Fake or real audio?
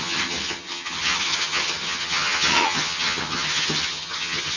fake